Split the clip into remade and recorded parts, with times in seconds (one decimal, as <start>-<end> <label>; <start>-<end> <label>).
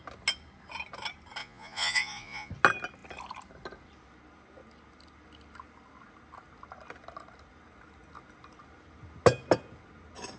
0.0-1.4 recorded; 1.4-2.5 remade; 2.5-10.4 recorded